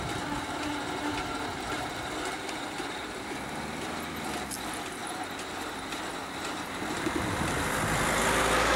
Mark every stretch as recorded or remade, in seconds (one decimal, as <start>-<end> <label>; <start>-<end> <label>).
0.0-1.5 recorded; 1.5-3.3 remade; 3.3-8.8 recorded